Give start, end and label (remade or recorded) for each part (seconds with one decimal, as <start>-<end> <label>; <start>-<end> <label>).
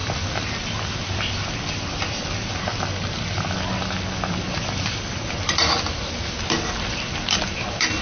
0.0-8.0 recorded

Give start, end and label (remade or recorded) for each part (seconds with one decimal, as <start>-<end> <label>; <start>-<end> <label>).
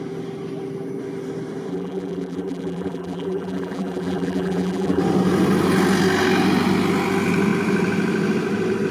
0.0-1.7 recorded; 1.7-5.0 remade; 5.0-8.9 recorded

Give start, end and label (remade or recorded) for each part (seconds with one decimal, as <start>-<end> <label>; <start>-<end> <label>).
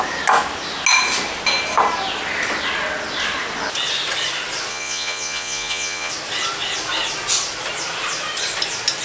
0.0-4.7 recorded; 4.7-6.1 remade; 6.1-9.0 recorded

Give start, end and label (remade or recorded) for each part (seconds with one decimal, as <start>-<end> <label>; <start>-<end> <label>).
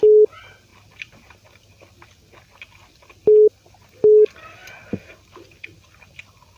0.0-6.6 recorded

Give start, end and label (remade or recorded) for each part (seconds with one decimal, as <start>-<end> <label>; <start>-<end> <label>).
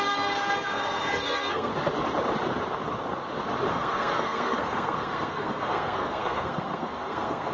0.0-1.7 remade; 1.7-3.7 recorded; 3.7-7.5 remade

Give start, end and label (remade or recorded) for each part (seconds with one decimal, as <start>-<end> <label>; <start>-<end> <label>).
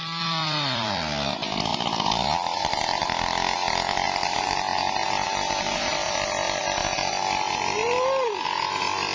0.0-9.1 remade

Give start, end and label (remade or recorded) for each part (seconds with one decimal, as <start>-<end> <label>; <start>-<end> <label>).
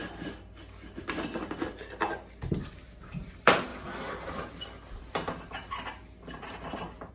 0.0-3.0 recorded; 3.0-3.7 remade; 3.7-7.1 recorded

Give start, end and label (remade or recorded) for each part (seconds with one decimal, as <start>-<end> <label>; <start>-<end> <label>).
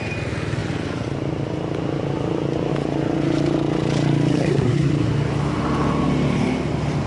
0.0-4.3 recorded; 4.3-4.9 remade; 4.9-7.1 recorded